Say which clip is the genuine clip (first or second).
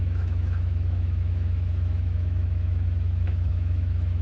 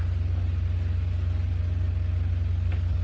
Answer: second